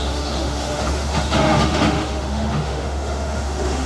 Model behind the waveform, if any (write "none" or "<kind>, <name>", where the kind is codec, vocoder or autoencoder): autoencoder, DAC-VAE